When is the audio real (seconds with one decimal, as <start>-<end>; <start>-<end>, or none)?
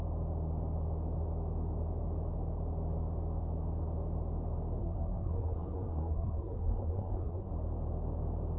0.0-4.8; 7.5-8.6